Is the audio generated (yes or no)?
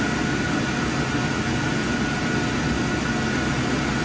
no